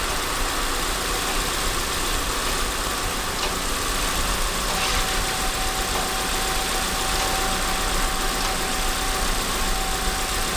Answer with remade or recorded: recorded